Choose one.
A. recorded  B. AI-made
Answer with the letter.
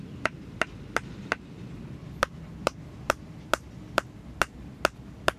A